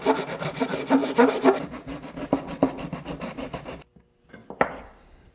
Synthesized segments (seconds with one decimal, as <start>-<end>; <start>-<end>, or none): 1.0-3.9; 4.4-5.3